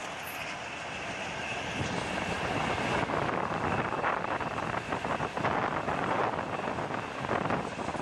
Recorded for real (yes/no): yes